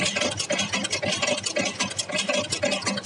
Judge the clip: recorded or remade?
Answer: recorded